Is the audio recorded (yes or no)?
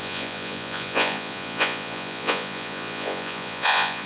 no